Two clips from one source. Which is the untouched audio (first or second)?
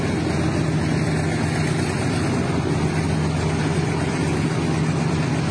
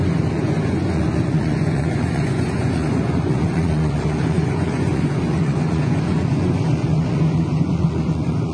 first